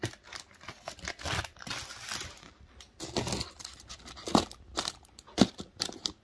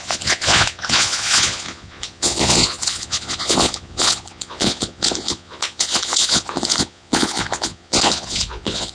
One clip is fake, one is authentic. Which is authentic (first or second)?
first